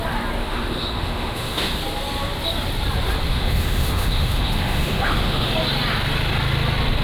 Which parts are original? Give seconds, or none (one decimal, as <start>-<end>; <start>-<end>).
0.0-0.4; 1.8-3.3; 5.5-7.0